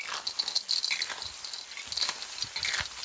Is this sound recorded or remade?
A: recorded